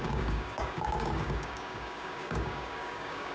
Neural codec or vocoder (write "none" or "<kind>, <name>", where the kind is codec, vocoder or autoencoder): codec, DAC